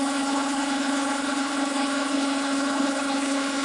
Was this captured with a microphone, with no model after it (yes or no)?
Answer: no